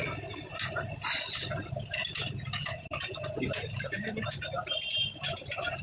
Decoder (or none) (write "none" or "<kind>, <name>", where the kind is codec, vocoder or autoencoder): none